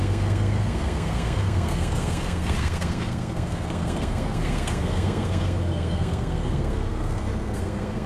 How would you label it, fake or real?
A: fake